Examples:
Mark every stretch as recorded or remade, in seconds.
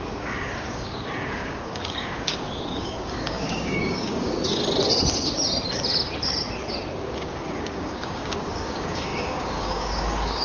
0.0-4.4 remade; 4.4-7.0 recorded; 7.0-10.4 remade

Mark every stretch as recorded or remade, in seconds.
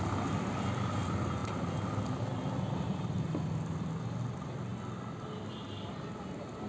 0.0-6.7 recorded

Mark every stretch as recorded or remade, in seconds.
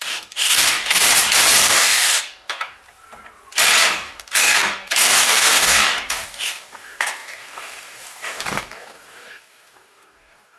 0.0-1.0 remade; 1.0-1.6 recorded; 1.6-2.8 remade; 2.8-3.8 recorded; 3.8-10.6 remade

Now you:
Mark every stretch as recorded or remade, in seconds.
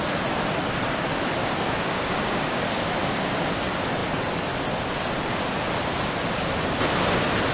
0.0-1.4 recorded; 1.4-2.6 remade; 2.6-7.5 recorded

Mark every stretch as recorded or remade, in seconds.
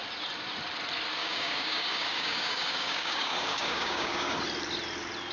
0.0-1.2 recorded; 1.2-4.4 remade; 4.4-5.3 recorded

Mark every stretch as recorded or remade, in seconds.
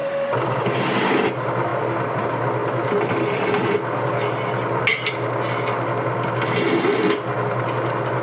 0.0-1.2 remade; 1.2-8.2 recorded